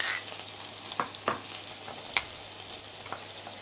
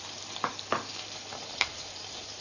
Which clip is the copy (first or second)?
second